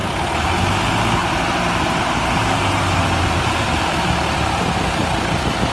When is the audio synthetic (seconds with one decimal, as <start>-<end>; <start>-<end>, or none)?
0.0-0.6; 1.2-4.6